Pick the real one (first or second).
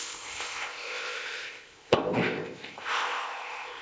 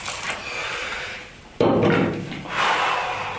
second